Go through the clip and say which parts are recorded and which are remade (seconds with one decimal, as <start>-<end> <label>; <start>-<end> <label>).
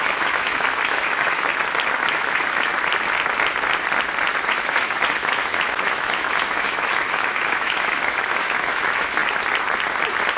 0.0-1.5 remade; 1.5-2.1 recorded; 2.1-2.7 remade; 2.7-4.5 recorded; 4.5-9.2 remade; 9.2-10.4 recorded